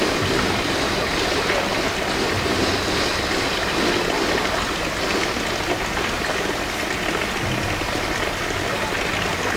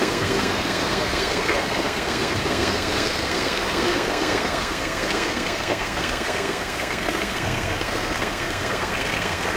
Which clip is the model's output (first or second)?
second